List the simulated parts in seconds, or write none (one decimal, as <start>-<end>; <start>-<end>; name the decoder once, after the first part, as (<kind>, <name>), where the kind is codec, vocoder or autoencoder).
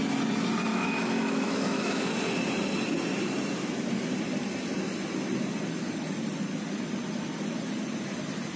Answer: 0.7-2.1 (autoencoder, DAC-VAE)